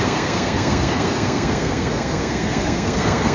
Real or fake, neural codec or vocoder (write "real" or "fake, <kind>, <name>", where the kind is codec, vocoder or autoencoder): fake, codec, SNAC